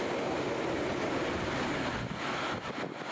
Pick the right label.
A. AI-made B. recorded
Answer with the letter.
B